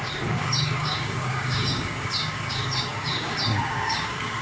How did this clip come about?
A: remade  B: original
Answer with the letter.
A